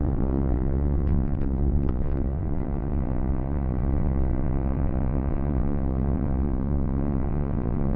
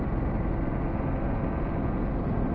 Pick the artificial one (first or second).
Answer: first